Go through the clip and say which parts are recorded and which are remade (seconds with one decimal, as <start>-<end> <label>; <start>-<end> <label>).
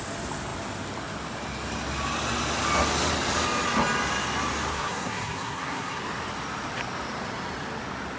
0.0-4.7 recorded; 4.7-6.0 remade; 6.0-8.2 recorded